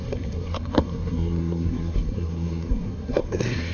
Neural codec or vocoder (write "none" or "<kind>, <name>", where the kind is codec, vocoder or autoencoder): codec, SNAC